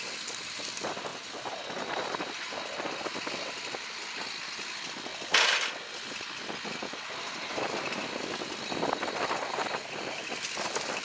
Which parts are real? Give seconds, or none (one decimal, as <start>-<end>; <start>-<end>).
0.0-11.0